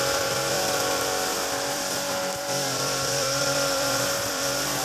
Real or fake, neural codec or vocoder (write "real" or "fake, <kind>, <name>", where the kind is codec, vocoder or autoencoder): fake, vocoder, BigVGAN v2